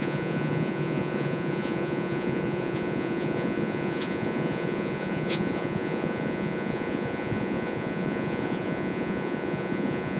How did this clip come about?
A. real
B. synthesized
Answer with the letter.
B